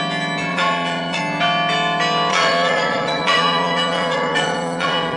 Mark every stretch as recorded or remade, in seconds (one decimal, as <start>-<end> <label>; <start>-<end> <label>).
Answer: 0.0-0.5 recorded; 0.5-1.2 remade; 1.2-2.3 recorded; 2.3-5.2 remade